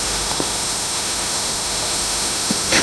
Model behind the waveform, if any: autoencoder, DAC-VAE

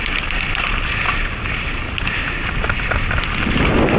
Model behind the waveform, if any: none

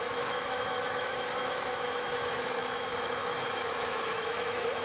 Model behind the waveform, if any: autoencoder, DAC-VAE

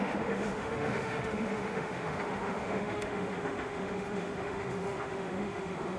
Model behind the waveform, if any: autoencoder, DAC-VAE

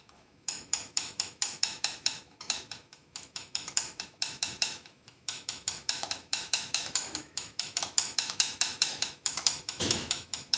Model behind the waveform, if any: autoencoder, DAC-VAE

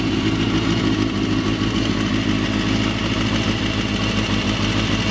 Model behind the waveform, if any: none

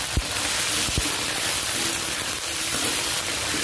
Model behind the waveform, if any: none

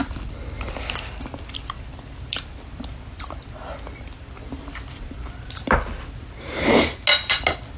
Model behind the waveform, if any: none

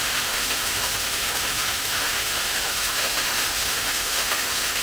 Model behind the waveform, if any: autoencoder, DAC-VAE